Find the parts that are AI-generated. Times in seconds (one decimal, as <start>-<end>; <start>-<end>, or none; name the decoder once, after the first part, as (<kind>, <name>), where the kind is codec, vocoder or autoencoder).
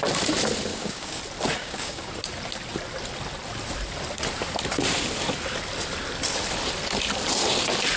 0.7-1.2 (codec, DAC); 1.6-2.1